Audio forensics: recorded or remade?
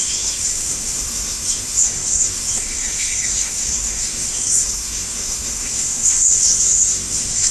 remade